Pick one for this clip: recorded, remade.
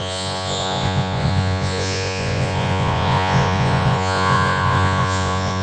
remade